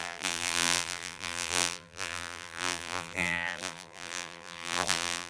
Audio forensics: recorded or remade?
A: remade